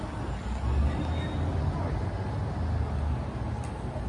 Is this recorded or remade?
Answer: recorded